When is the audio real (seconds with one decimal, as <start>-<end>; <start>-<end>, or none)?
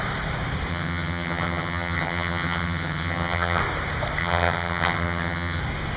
0.0-0.7; 3.6-4.2; 5.6-6.0